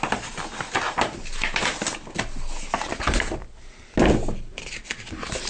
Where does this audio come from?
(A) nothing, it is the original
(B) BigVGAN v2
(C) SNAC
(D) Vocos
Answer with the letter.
A